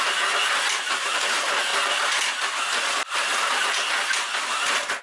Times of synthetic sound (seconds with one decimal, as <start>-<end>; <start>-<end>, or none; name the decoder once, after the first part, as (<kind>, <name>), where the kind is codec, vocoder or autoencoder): none